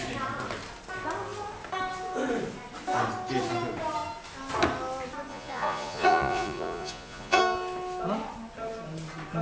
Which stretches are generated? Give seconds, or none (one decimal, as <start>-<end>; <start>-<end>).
5.3-7.4